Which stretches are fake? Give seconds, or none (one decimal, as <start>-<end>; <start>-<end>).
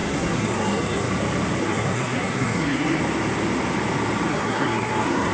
0.0-1.1; 1.6-3.0; 4.3-5.3